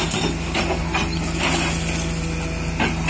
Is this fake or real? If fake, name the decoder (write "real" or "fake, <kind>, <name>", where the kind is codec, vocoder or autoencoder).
real